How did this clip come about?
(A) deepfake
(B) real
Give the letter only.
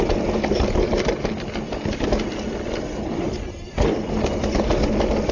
B